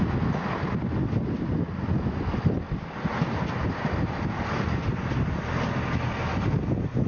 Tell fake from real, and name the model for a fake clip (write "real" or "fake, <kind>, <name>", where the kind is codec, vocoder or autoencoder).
real